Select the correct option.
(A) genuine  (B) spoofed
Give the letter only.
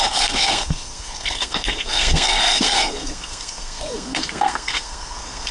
B